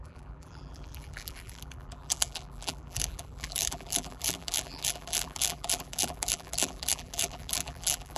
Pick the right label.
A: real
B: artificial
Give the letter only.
B